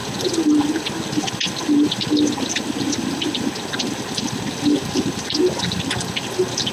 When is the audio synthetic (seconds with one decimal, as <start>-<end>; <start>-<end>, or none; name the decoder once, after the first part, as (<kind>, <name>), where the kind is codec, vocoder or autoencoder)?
none